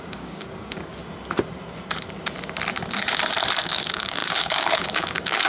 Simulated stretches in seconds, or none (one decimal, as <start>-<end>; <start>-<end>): 0.0-1.0; 3.7-5.5